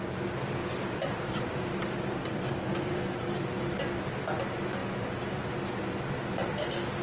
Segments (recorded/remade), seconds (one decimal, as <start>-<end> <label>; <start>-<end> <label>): 0.0-0.6 recorded; 0.6-4.1 remade; 4.1-7.0 recorded

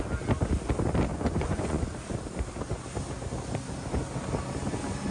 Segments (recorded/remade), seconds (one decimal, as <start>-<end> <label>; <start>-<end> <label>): 0.0-1.1 recorded; 1.1-1.8 remade; 1.8-5.1 recorded